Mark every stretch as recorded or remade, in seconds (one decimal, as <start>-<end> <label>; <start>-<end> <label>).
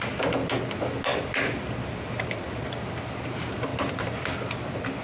0.0-1.1 recorded; 1.1-3.1 remade; 3.1-3.7 recorded; 3.7-4.5 remade; 4.5-5.0 recorded